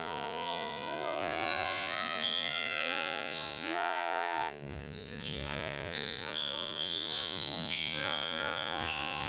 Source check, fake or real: fake